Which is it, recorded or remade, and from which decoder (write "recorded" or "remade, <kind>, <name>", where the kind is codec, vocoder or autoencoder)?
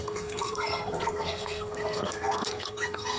remade, codec, SNAC